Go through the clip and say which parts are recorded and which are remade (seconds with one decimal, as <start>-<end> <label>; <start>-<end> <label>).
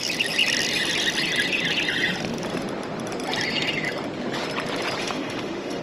0.0-5.0 recorded; 5.0-5.8 remade